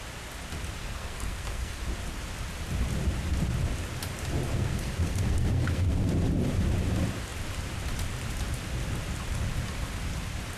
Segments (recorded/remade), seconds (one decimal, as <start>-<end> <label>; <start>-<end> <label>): 0.0-0.8 recorded; 0.8-1.8 remade; 1.8-4.5 recorded; 4.5-6.1 remade; 6.1-10.6 recorded